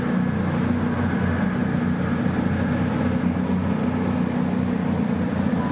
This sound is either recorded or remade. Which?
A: recorded